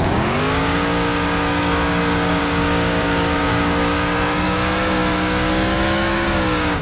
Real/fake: fake